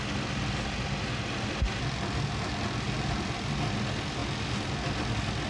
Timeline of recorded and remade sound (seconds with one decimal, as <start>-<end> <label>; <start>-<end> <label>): 0.0-5.5 recorded